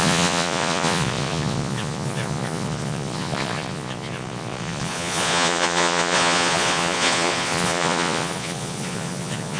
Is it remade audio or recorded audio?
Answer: remade